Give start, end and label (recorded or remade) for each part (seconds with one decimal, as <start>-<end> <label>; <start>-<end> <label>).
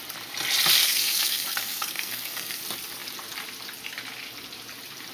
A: 0.0-0.8 recorded; 0.8-2.6 remade; 2.6-5.1 recorded